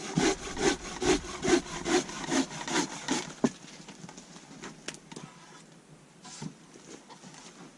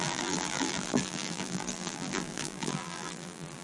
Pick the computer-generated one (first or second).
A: second